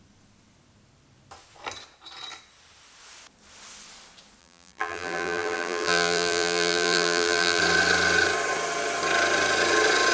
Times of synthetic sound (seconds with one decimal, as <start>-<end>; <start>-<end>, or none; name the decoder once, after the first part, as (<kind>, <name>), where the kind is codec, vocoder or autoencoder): 4.4-7.6 (vocoder, BigVGAN v2)